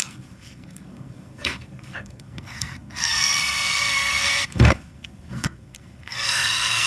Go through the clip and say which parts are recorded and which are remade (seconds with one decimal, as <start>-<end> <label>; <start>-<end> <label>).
0.0-6.9 remade